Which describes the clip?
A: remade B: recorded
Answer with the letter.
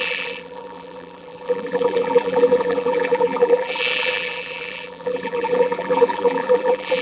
A